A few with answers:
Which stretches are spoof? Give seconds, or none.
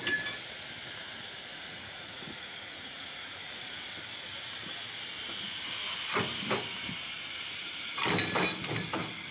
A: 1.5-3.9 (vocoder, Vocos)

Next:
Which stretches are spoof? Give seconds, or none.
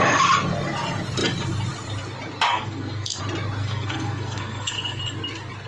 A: 2.5-3.2 (codec, SNAC); 3.6-5.0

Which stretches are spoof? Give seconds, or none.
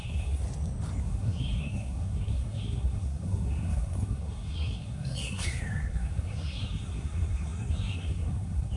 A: 0.0-0.4 (codec, SNAC); 1.0-8.8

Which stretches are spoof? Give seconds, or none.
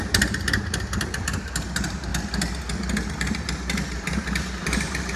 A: 0.0-2.1 (vocoder, BigVGAN v2); 3.1-5.2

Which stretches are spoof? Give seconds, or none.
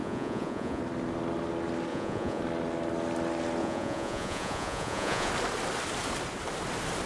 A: 0.0-0.8 (vocoder, Vocos); 1.9-2.4; 3.6-5.3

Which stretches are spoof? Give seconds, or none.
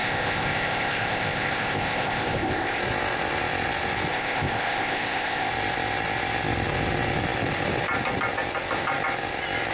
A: 0.0-2.8 (codec, ZipCodec); 4.1-5.5